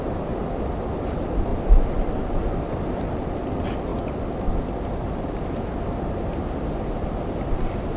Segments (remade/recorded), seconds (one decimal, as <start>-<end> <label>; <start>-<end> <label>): 0.0-8.0 recorded